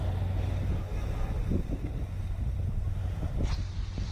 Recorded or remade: recorded